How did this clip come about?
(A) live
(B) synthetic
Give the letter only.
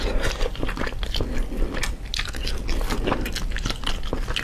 A